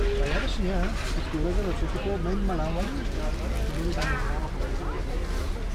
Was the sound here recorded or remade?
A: recorded